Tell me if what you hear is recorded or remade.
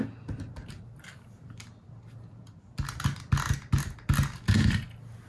recorded